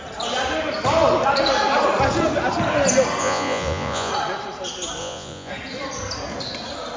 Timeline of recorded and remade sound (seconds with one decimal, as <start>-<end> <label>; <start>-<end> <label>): 0.0-3.2 recorded; 3.2-4.1 remade; 4.1-5.0 recorded; 5.0-5.5 remade; 5.5-7.0 recorded